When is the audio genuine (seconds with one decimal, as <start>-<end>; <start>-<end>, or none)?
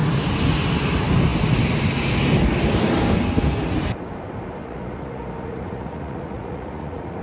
0.0-4.6